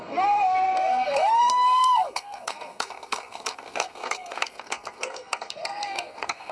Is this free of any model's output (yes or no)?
no